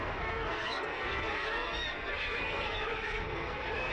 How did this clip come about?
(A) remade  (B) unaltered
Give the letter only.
A